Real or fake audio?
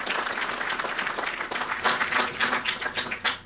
real